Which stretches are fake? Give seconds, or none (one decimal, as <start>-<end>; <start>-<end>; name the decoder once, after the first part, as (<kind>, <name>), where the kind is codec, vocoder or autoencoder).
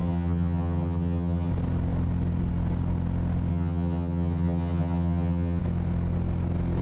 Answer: 0.0-1.5 (vocoder, HiFi-GAN); 3.5-5.6